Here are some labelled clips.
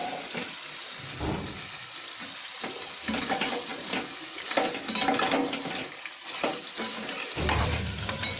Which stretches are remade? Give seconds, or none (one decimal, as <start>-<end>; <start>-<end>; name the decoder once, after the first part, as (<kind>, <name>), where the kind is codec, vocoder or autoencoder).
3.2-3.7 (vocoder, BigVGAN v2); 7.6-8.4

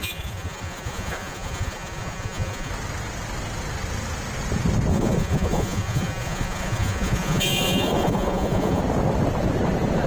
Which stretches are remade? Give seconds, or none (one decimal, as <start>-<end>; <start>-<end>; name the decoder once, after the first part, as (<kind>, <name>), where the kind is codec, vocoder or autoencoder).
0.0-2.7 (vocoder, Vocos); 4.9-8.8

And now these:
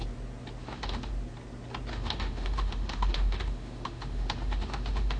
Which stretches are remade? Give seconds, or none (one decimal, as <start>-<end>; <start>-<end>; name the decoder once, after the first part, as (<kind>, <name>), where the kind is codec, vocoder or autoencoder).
0.6-1.1 (autoencoder, DAC-VAE); 1.9-5.2

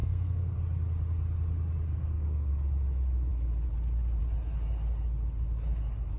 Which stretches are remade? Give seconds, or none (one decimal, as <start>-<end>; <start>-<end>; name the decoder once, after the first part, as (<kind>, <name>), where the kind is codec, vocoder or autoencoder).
0.0-0.6 (codec, SNAC); 1.9-2.5

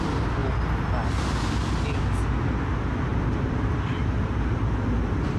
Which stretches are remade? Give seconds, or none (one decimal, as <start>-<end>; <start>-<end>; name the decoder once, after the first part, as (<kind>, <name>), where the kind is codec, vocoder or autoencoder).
3.1-4.6 (vocoder, BigVGAN v2)

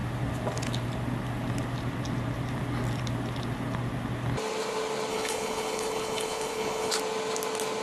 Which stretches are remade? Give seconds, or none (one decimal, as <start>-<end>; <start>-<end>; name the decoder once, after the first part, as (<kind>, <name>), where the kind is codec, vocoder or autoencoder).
5.1-6.9 (codec, HILCodec)

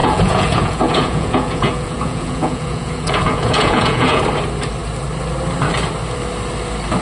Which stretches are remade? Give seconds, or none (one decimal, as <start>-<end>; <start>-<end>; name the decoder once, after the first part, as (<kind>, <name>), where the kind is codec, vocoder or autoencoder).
0.0-4.2 (vocoder, Vocos)

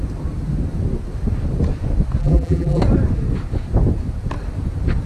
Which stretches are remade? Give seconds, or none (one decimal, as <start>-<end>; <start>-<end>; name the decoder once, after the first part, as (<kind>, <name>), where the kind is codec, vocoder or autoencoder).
2.2-2.8 (vocoder, BigVGAN v2)